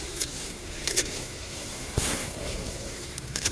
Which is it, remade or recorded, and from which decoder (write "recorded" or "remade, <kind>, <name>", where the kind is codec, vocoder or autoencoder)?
remade, codec, SNAC